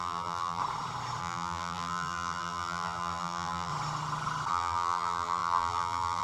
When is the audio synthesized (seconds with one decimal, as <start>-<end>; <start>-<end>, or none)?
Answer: 0.0-0.6; 1.2-3.7; 4.5-6.2